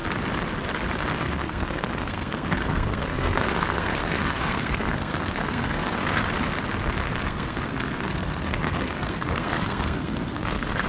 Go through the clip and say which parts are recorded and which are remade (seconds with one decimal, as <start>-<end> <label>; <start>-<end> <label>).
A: 0.0-1.2 recorded; 1.2-6.2 remade; 6.2-7.2 recorded; 7.2-10.9 remade